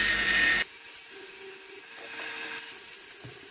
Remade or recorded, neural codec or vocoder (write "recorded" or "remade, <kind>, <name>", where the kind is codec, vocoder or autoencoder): recorded